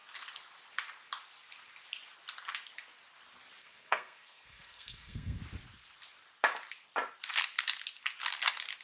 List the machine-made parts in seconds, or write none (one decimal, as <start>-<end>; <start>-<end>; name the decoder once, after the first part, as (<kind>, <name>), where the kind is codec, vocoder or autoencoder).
3.6-5.4 (codec, SNAC)